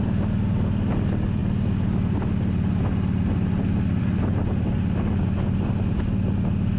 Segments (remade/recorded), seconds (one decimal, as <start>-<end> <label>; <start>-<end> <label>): 0.0-6.8 recorded